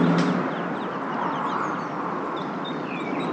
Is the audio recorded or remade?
recorded